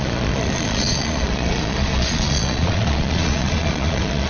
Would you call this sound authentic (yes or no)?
no